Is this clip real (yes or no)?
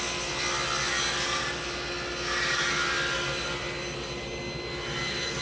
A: yes